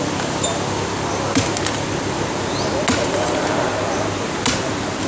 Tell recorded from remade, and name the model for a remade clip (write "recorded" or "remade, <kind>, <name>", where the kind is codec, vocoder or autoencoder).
recorded